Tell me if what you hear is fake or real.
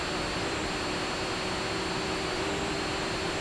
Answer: real